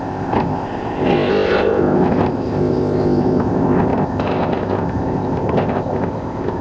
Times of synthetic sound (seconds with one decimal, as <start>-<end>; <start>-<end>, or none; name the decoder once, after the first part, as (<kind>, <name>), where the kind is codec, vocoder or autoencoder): 0.0-6.6 (codec, ZipCodec)